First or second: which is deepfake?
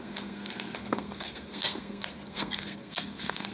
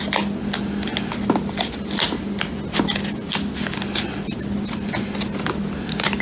first